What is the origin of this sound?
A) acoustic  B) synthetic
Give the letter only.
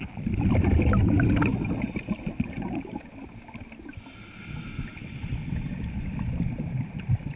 A